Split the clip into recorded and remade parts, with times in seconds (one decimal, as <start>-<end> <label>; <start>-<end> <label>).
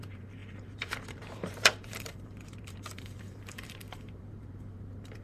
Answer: 0.0-5.2 remade